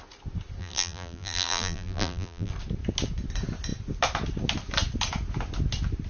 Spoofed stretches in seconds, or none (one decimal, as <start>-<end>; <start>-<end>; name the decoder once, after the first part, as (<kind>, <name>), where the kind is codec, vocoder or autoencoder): 0.6-2.5 (vocoder, BigVGAN v2)